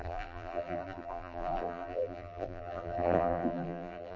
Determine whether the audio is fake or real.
fake